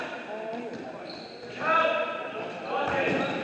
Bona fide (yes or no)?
yes